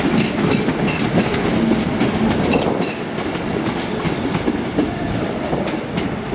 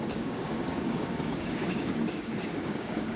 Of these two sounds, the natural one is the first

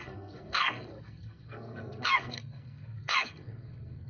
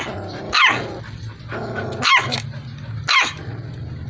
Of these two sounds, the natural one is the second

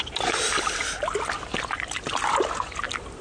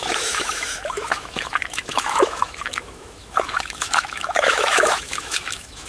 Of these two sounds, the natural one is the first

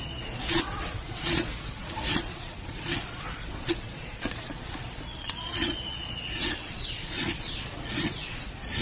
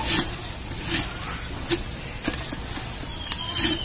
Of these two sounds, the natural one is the second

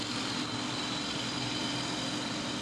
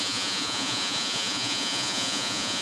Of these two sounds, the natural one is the first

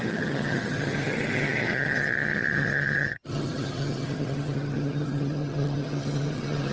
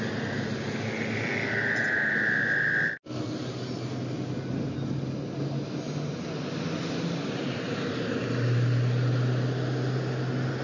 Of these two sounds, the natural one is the second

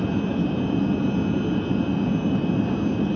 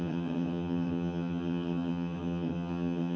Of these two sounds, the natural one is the first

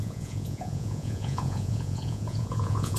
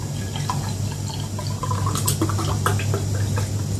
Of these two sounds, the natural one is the second